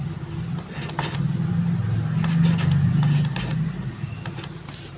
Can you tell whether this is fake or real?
real